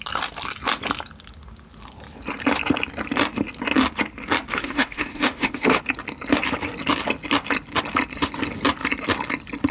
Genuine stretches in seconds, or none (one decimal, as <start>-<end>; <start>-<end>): 0.0-4.5; 5.8-9.7